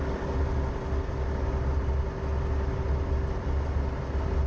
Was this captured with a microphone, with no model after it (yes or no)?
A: yes